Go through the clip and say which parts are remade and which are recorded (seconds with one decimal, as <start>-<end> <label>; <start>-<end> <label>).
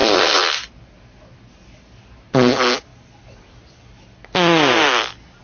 0.0-5.4 recorded